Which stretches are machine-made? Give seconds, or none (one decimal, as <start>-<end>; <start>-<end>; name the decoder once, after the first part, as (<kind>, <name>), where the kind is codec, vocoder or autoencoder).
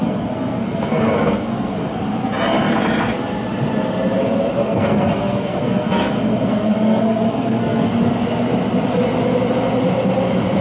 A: 0.0-1.9 (codec, SNAC); 4.6-7.9